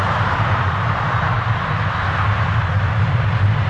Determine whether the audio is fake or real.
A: real